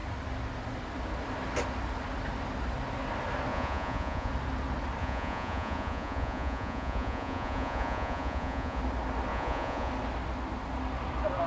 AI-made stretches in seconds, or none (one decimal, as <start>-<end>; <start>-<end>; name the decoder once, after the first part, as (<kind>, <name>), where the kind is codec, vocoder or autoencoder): 3.5-4.3 (vocoder, Vocos); 5.0-8.8; 9.3-9.9